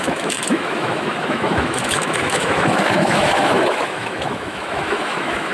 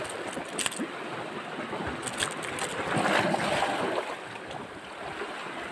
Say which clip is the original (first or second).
second